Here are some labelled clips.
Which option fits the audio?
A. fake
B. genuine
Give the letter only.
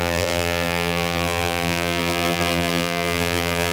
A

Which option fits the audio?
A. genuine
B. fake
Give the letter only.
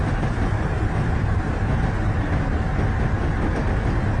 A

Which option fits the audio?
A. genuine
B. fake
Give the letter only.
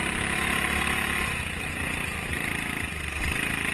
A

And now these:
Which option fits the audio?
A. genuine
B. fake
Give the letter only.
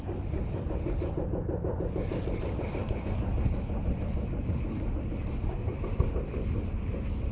A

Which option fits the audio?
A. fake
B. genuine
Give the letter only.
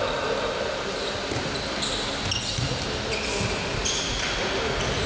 B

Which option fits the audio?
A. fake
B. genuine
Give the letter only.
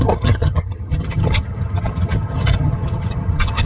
A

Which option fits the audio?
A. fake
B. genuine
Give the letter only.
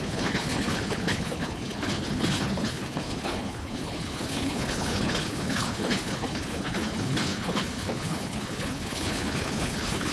A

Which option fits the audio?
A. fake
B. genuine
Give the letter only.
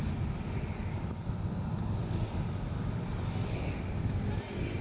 B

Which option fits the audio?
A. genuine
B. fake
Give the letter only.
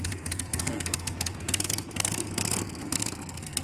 B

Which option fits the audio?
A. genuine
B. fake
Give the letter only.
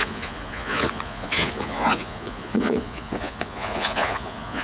B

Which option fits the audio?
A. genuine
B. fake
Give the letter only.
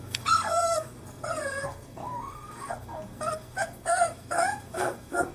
B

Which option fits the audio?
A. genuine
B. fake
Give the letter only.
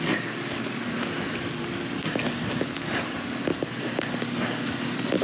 A